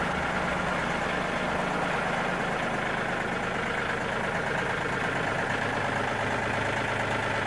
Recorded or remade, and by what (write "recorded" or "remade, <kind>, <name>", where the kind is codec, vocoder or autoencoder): recorded